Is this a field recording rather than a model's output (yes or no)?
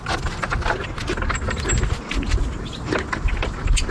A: yes